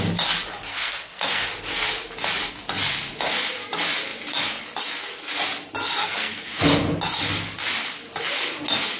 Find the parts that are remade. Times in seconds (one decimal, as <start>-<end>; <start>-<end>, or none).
0.7-1.6; 6.0-6.6